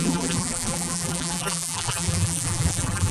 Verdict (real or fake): fake